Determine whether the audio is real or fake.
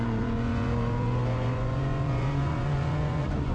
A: fake